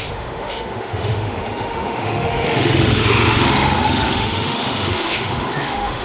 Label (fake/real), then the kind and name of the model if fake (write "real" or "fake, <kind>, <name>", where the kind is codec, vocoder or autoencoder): fake, autoencoder, DAC-VAE